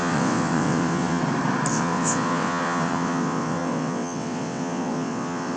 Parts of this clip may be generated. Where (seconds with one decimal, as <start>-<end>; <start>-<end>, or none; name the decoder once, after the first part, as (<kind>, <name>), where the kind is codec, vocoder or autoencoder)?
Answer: 0.0-1.2 (vocoder, WaveNeXt); 1.7-5.6

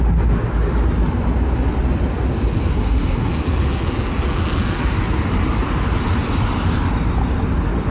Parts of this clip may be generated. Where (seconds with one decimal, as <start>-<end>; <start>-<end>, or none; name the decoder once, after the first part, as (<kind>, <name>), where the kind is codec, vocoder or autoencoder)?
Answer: 2.7-3.3 (codec, SNAC)